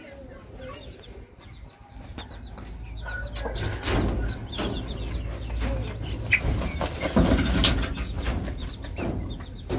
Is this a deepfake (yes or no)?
no